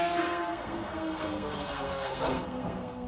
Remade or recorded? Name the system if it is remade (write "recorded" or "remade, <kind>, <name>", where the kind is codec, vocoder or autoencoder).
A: remade, codec, SNAC